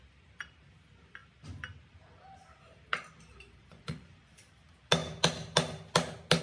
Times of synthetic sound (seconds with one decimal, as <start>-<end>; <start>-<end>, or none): 3.6-4.3